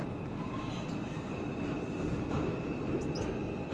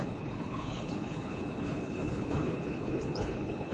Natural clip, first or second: first